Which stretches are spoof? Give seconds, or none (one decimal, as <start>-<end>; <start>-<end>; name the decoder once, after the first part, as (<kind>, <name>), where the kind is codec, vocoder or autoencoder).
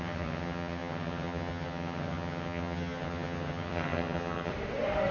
0.0-4.5 (vocoder, HiFi-GAN)